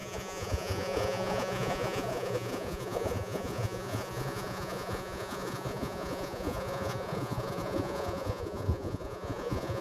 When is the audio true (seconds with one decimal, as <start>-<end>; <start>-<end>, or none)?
none